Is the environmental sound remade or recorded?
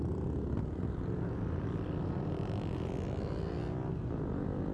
recorded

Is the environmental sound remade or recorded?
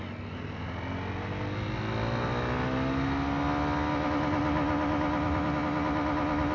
recorded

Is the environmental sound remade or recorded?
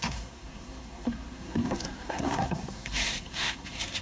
remade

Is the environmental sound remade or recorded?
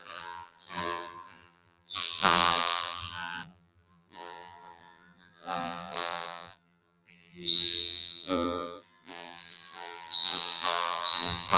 remade